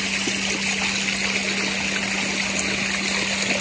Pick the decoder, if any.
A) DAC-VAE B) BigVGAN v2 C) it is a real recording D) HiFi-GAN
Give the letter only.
C